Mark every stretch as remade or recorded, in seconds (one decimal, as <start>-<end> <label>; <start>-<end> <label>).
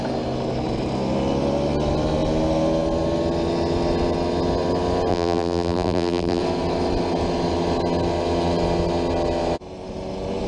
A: 0.0-5.1 recorded; 5.1-6.4 remade; 6.4-10.5 recorded